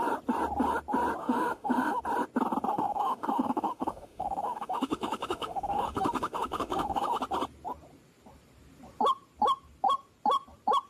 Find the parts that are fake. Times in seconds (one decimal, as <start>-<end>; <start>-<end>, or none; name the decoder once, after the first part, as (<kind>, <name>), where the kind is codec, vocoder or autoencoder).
1.2-2.0 (autoencoder, DAC-VAE); 2.7-7.2